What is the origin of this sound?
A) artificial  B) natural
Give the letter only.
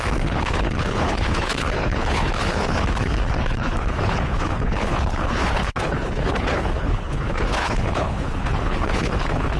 A